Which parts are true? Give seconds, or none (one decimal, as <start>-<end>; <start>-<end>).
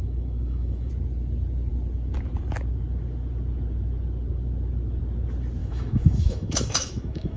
0.9-5.6